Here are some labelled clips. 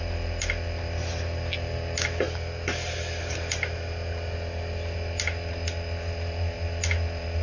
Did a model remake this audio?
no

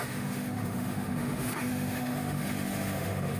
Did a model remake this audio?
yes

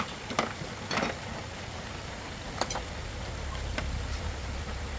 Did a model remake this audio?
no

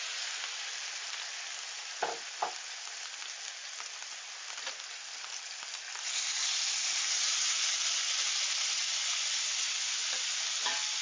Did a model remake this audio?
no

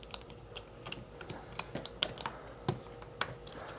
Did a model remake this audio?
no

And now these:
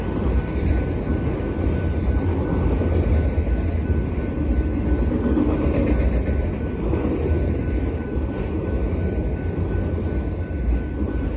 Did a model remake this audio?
no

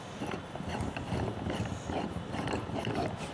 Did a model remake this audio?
no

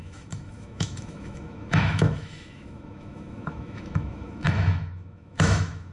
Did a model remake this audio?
yes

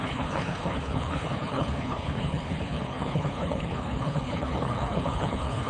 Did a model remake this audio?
yes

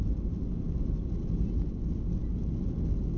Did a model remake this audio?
no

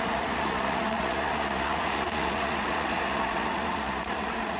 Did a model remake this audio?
yes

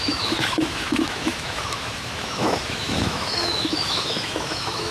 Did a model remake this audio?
yes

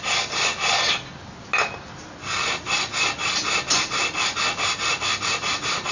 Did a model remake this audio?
no